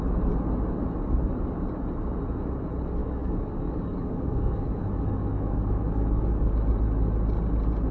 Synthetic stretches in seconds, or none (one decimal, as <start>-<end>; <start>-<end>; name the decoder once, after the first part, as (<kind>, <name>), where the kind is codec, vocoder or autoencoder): 3.0-6.5 (codec, DAC)